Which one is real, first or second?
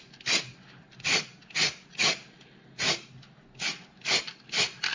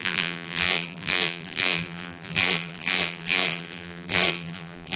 first